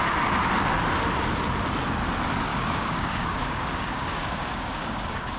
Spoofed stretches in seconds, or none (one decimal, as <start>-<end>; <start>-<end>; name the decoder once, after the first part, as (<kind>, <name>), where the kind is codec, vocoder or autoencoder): 2.5-5.4 (codec, DAC)